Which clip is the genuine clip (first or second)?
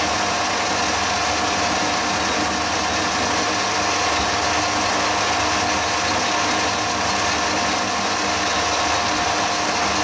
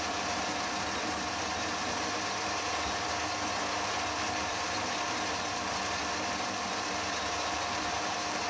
first